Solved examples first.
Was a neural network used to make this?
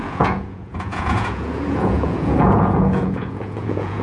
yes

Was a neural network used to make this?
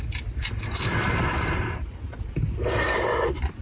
no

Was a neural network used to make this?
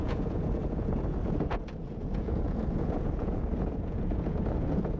yes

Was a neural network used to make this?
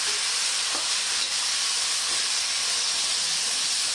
no